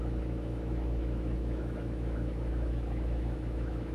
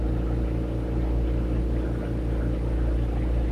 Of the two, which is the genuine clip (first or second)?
second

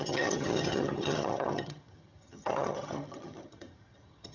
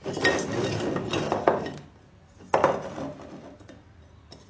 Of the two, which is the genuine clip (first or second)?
second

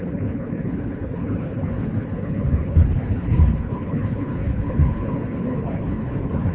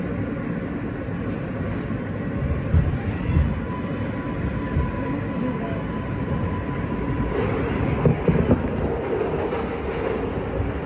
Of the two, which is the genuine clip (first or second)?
second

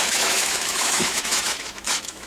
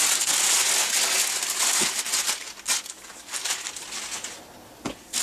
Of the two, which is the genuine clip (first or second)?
second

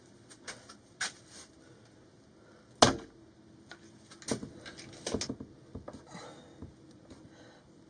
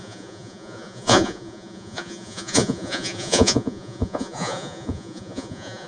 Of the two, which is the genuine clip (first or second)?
first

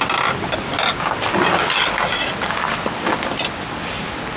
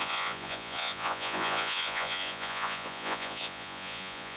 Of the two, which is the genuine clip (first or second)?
first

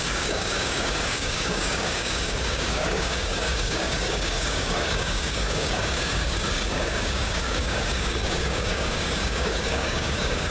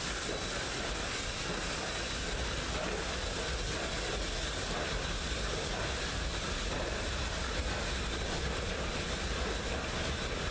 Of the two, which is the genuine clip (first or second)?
second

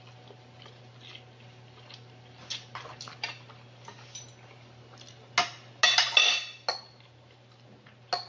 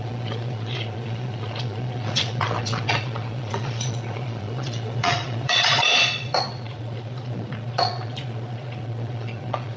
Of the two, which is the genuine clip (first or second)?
first